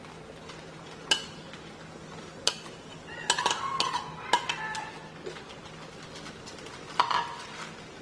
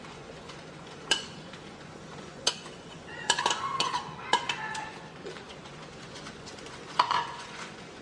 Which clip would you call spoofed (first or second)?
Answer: second